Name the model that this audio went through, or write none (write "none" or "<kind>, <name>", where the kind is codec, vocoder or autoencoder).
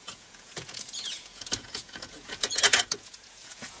vocoder, Vocos